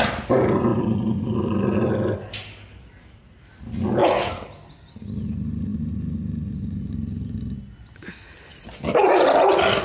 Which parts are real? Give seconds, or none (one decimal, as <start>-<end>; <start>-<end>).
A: 0.0-0.7; 1.8-4.0; 4.7-5.7; 7.4-9.8

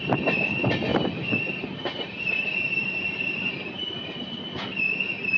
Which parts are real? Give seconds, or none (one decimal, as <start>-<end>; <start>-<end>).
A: 0.0-0.9; 4.1-5.4

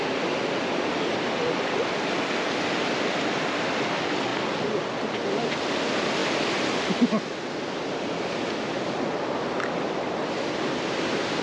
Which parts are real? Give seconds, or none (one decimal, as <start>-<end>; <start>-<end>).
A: 0.0-11.4

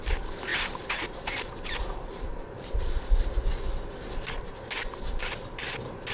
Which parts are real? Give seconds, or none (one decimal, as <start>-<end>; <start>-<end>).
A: 0.0-0.5; 2.3-6.1

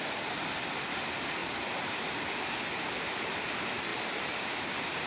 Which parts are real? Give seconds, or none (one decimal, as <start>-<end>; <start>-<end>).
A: 0.0-3.9

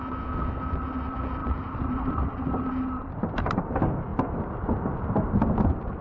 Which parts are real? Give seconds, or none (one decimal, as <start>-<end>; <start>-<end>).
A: 0.0-1.4; 3.6-6.0

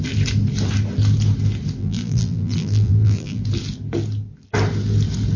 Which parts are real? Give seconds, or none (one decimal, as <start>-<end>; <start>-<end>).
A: 0.0-1.8; 3.4-5.4

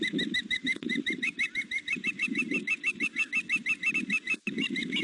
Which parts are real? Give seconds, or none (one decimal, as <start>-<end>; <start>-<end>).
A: 0.0-0.4; 2.1-5.0